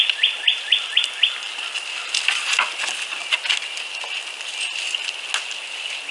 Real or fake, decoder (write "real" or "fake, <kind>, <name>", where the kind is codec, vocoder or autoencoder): real